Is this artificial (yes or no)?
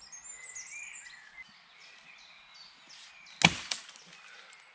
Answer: no